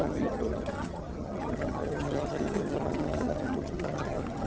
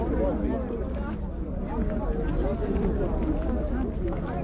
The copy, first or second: first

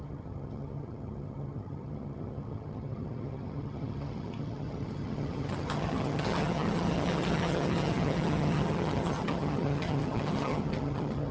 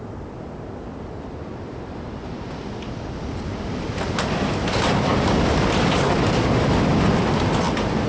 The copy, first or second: first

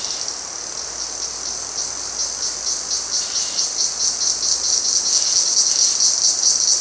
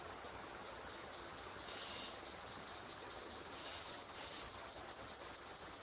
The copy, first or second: second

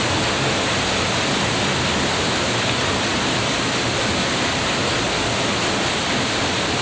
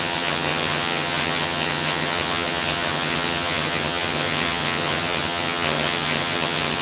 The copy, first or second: second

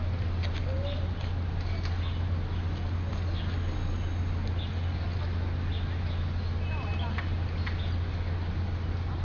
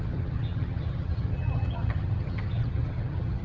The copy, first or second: second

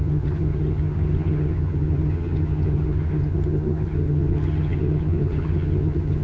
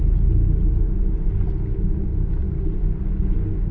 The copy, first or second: first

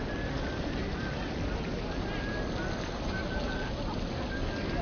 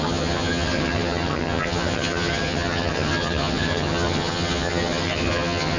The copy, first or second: second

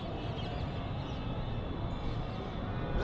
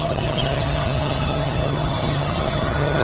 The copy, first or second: second